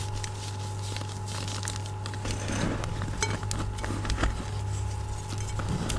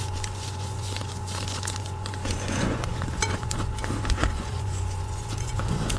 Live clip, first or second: first